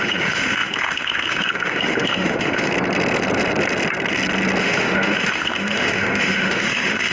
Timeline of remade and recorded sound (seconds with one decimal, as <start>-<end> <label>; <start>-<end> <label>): 0.0-2.7 remade; 2.7-4.6 recorded; 4.6-7.1 remade